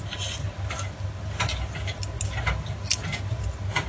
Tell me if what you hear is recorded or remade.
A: recorded